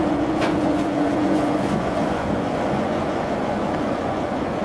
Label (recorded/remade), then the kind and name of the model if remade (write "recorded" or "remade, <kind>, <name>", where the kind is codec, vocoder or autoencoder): remade, vocoder, Vocos